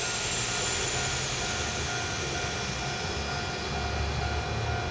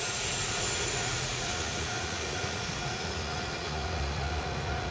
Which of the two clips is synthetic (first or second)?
second